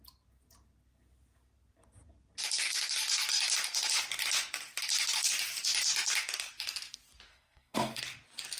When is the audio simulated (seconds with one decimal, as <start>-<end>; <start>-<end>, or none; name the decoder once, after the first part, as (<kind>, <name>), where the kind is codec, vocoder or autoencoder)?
7.3-8.0 (codec, SNAC)

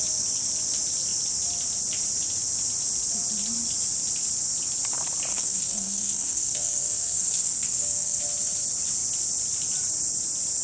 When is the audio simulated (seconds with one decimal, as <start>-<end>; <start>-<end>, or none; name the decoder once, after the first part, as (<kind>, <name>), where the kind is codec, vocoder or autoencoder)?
5.3-8.2 (codec, SNAC)

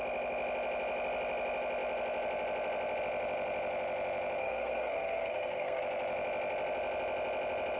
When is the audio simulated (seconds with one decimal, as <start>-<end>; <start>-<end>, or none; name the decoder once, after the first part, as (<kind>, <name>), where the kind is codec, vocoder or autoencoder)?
4.4-5.8 (codec, SNAC)